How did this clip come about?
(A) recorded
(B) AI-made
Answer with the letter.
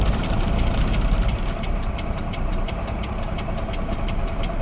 B